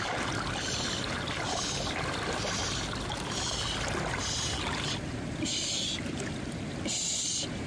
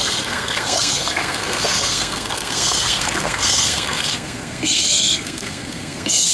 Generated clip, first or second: second